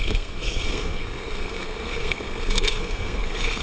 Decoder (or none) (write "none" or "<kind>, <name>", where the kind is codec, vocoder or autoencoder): codec, SNAC